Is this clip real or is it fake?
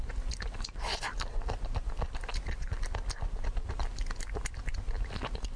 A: real